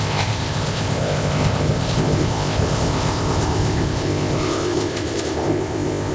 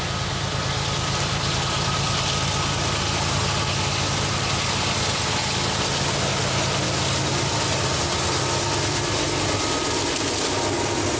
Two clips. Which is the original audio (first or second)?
second